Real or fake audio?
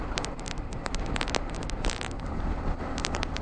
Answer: real